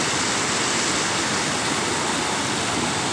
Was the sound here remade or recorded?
recorded